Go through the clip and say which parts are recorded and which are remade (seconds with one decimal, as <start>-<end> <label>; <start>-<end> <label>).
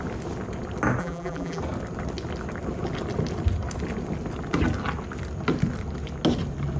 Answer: 0.0-1.0 recorded; 1.0-1.6 remade; 1.6-6.8 recorded